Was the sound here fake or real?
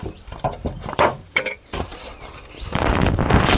fake